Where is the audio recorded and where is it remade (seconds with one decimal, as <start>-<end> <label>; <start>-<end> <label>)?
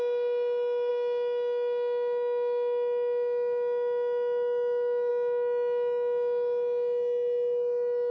0.0-8.1 recorded